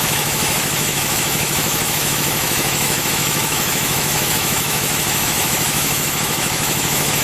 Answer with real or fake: fake